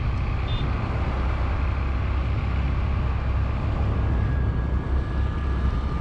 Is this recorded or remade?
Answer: recorded